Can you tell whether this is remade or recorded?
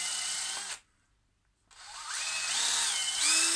recorded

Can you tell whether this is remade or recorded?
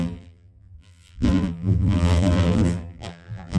remade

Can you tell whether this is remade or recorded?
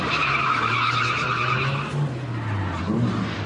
recorded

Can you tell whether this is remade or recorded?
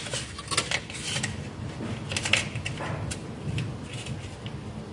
recorded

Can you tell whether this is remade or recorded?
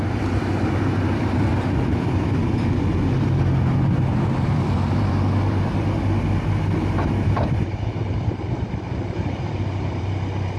remade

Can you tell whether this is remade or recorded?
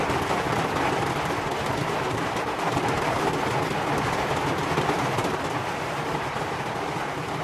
remade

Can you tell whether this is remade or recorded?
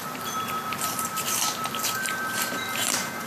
remade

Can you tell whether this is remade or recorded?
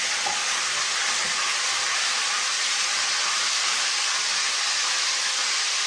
recorded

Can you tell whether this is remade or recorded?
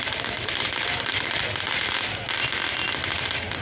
recorded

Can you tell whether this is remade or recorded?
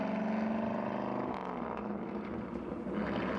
recorded